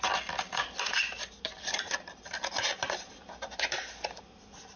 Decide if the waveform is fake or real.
real